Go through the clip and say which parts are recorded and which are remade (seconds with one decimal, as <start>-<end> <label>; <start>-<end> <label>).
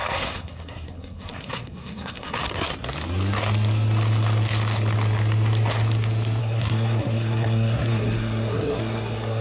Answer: 0.0-2.7 remade; 2.7-6.4 recorded; 6.4-9.4 remade